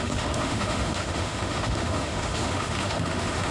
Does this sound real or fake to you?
fake